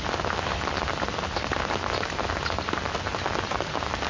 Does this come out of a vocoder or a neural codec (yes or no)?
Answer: no